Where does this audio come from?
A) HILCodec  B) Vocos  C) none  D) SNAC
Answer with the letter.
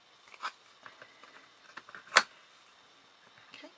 C